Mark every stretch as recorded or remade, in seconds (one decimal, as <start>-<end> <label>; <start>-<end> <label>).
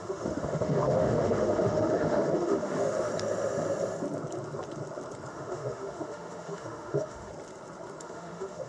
0.0-3.1 remade; 3.1-5.3 recorded; 5.3-7.3 remade; 7.3-8.0 recorded; 8.0-8.7 remade